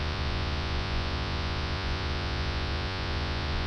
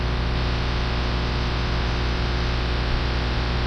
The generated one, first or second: first